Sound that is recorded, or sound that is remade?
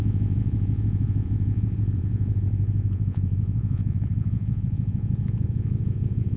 remade